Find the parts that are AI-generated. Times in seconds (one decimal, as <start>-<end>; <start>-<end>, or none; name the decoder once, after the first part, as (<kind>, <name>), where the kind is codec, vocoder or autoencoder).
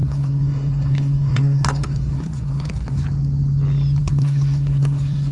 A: 0.0-3.0 (codec, SNAC); 4.0-5.3